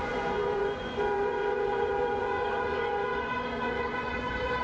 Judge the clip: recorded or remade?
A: remade